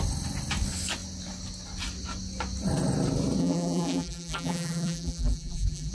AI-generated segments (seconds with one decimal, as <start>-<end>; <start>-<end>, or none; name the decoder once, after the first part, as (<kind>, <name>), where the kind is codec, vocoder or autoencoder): 3.4-5.9 (vocoder, BigVGAN v2)

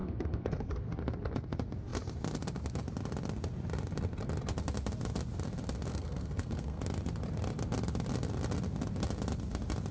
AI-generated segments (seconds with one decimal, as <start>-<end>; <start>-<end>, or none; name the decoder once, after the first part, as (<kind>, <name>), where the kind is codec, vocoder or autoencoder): 0.0-0.9 (codec, SNAC); 5.9-6.8

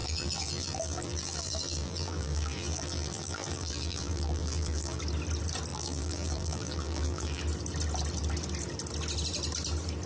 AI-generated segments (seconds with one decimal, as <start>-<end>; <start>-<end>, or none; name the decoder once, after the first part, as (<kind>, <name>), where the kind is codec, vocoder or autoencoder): 0.0-5.0 (vocoder, BigVGAN v2); 5.7-7.4

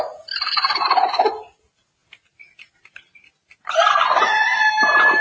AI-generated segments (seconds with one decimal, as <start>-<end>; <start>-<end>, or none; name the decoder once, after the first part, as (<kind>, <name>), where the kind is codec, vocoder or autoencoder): none

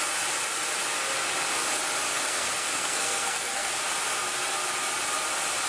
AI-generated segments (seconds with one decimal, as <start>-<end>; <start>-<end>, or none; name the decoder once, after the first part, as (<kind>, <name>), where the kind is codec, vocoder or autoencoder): 2.1-3.7 (codec, SNAC)

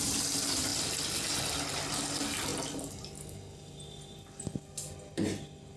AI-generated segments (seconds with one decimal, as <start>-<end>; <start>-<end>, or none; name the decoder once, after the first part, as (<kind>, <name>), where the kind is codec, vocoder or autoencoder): 0.0-0.7 (vocoder, BigVGAN v2); 1.4-5.8